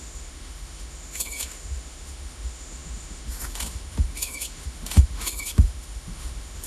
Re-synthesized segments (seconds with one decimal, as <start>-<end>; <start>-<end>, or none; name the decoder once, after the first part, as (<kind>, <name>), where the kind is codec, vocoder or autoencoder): 0.0-6.7 (autoencoder, DAC-VAE)